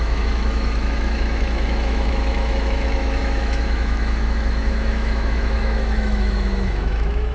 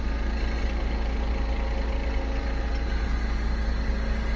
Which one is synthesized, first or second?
first